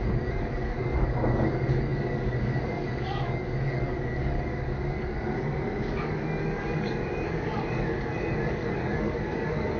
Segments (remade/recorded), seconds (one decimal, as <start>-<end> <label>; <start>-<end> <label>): 0.0-9.8 remade